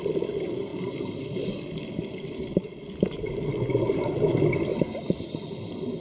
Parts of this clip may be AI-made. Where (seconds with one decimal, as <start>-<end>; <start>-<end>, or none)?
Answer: none